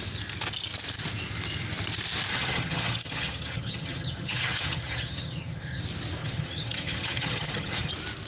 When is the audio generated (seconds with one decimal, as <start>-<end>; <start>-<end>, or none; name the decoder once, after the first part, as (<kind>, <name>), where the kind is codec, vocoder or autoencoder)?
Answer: 2.3-5.8 (vocoder, HiFi-GAN); 6.2-7.9

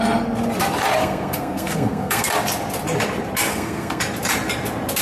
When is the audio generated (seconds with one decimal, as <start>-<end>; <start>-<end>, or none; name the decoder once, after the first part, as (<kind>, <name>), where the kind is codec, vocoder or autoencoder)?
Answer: 1.0-2.3 (codec, SNAC); 3.5-4.0

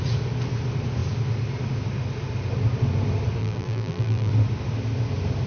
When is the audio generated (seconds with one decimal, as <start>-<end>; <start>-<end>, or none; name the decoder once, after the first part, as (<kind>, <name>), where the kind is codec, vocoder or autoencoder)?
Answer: 3.4-4.3 (vocoder, BigVGAN v2)

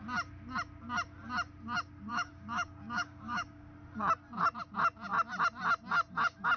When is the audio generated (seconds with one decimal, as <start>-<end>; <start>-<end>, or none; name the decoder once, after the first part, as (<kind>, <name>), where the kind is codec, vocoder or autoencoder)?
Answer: 2.1-3.7 (codec, DAC)

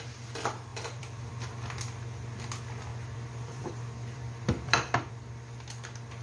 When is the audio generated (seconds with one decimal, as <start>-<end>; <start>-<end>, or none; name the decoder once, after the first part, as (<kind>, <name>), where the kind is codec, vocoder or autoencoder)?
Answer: 0.7-1.3 (vocoder, BigVGAN v2); 2.9-5.1

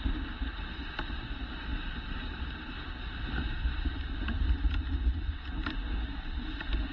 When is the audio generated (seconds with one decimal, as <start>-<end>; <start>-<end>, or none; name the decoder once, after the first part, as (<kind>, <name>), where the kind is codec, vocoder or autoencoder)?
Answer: none